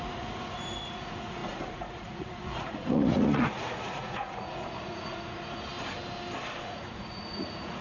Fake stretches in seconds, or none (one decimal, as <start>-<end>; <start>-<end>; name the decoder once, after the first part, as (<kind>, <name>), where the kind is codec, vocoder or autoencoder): 0.0-5.7 (vocoder, Vocos); 6.6-7.8